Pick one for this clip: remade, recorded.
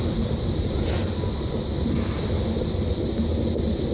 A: recorded